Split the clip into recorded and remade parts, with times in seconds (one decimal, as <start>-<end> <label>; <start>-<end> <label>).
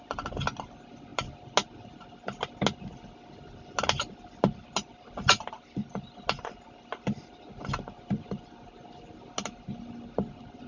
0.0-10.7 recorded